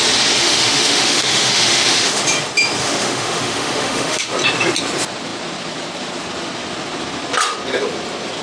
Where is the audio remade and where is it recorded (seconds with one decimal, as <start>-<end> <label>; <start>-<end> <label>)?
0.0-0.4 recorded; 0.4-2.2 remade; 2.2-2.8 recorded; 2.8-4.3 remade; 4.3-8.4 recorded